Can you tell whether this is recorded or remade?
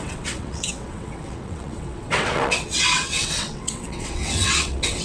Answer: remade